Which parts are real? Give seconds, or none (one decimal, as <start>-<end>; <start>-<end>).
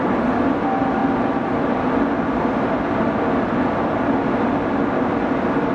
1.0-2.3